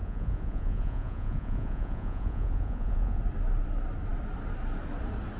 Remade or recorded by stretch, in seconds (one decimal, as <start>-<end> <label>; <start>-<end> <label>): 0.0-3.2 remade; 3.2-5.4 recorded